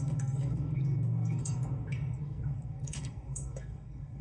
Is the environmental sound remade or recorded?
remade